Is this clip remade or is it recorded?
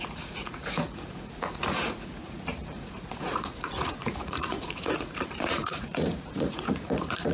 remade